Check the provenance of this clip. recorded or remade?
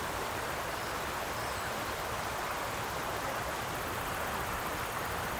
remade